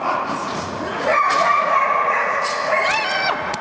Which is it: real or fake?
fake